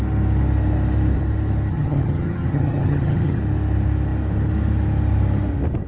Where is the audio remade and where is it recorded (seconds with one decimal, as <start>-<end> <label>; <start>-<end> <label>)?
0.0-1.7 recorded; 1.7-3.4 remade; 3.4-5.9 recorded